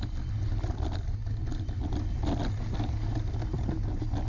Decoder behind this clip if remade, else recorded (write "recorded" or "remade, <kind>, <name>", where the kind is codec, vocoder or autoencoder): recorded